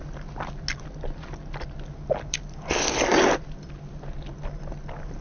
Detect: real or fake real